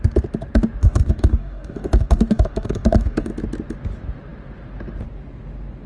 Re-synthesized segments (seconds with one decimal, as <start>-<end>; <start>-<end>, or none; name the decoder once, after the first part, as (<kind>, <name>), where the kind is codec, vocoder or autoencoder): 0.8-3.3 (codec, DAC)